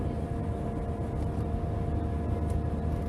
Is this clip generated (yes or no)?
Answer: no